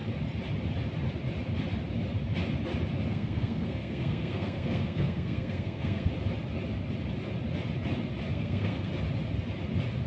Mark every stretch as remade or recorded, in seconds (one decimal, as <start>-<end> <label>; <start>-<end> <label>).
0.0-3.1 recorded; 3.1-6.1 remade; 6.1-8.3 recorded; 8.3-8.9 remade; 8.9-10.1 recorded